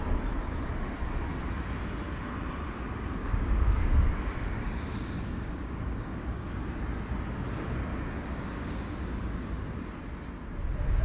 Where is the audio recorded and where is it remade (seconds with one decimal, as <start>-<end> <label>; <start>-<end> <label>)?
0.0-3.2 recorded; 3.2-6.8 remade; 6.8-7.9 recorded; 7.9-9.8 remade; 9.8-11.0 recorded